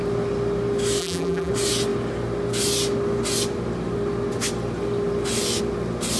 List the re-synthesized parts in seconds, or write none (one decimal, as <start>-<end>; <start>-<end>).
1.0-1.5